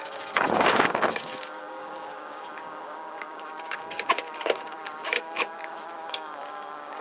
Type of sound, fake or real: fake